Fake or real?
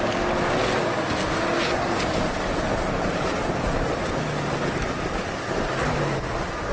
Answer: real